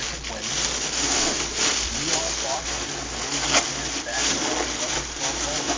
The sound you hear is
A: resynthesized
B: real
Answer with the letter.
B